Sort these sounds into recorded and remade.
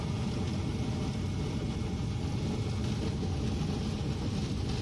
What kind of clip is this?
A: recorded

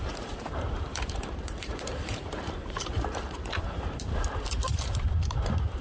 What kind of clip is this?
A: remade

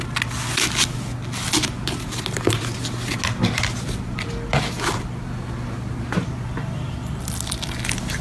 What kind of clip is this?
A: recorded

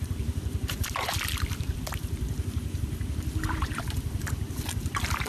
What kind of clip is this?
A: remade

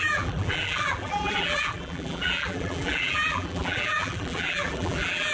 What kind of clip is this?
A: remade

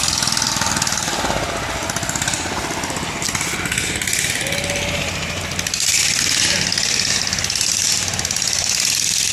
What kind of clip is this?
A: recorded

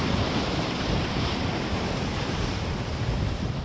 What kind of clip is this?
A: remade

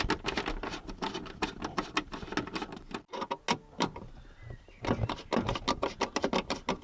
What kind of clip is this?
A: recorded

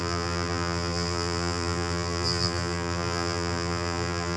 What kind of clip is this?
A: remade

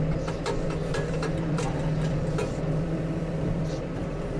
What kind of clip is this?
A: remade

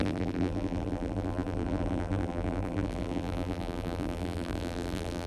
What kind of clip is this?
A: remade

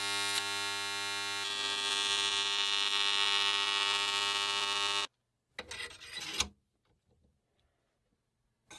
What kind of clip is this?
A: recorded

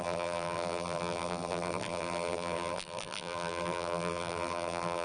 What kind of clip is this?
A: remade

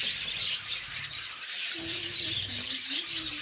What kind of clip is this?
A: remade